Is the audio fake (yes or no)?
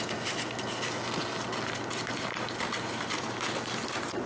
no